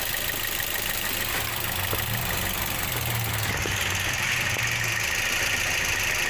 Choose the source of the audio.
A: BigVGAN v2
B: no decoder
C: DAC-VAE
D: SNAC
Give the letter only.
B